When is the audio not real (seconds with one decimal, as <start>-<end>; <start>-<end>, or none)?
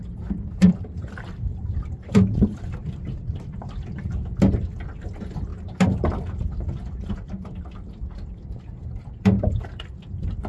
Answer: 0.0-5.5; 8.3-10.5